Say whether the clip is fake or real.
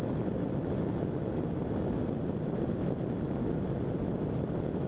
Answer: real